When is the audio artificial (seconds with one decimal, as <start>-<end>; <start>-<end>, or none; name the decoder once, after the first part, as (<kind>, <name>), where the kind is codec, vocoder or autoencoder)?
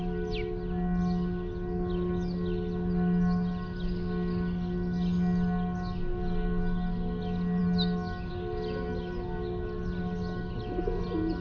none